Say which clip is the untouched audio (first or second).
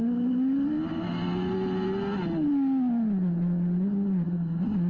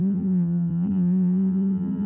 first